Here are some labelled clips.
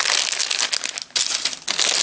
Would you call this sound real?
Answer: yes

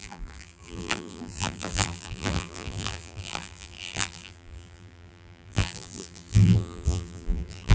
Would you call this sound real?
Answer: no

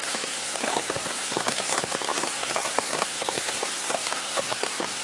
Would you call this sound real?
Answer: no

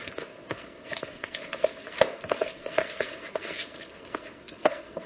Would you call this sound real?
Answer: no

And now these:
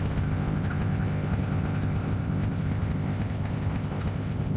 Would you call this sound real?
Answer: no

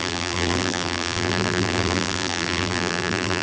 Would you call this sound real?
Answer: no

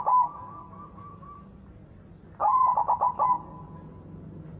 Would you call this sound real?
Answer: yes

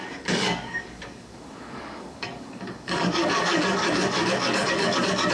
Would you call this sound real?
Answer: no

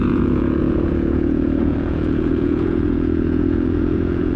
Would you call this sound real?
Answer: no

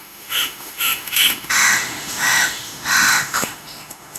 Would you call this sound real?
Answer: no